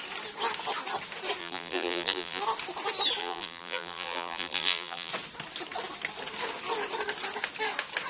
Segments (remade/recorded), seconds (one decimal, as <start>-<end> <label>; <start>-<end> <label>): 0.0-1.4 recorded; 1.4-2.4 remade; 2.4-3.2 recorded; 3.2-5.1 remade; 5.1-8.1 recorded